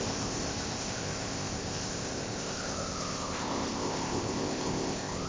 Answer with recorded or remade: remade